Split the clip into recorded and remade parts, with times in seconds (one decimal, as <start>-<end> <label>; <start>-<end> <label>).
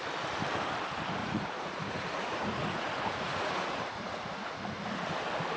0.0-1.2 recorded; 1.2-4.6 remade; 4.6-5.6 recorded